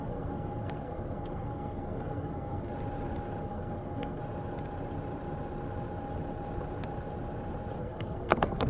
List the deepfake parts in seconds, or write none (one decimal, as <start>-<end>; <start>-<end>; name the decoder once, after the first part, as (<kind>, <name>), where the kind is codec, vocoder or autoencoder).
0.0-2.7 (codec, SNAC); 3.4-4.2; 7.8-8.7